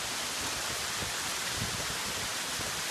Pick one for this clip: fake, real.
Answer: real